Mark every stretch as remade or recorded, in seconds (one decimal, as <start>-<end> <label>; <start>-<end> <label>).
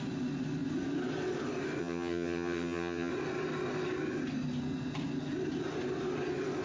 0.0-1.8 recorded; 1.8-3.1 remade; 3.1-6.6 recorded